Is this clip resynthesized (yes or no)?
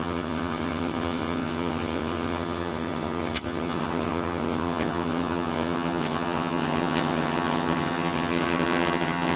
yes